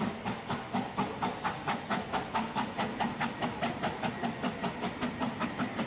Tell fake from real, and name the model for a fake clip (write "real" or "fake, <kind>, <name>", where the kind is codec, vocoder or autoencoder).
real